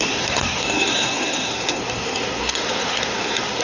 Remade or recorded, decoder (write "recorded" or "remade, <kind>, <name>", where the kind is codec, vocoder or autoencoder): remade, codec, SNAC